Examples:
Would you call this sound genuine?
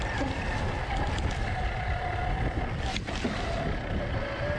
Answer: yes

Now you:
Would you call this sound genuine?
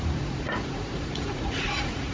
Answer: no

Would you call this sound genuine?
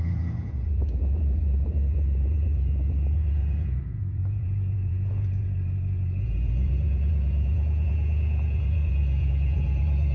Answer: no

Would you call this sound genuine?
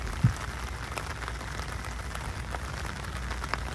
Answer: yes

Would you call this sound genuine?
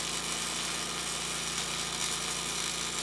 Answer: yes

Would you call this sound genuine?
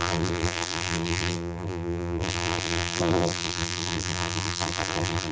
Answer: no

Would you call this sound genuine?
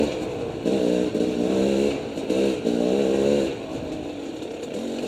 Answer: yes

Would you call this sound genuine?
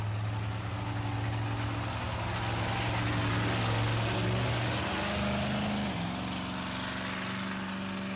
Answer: yes